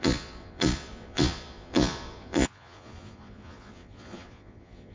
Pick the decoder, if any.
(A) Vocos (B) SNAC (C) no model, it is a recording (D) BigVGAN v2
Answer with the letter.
A